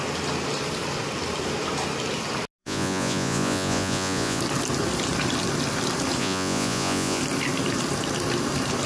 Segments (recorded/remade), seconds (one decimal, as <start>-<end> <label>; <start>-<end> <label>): 0.0-2.6 recorded; 2.6-4.4 remade; 4.4-6.2 recorded; 6.2-7.2 remade; 7.2-8.9 recorded